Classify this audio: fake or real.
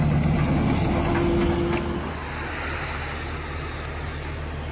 real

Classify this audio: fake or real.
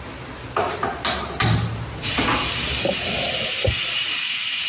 real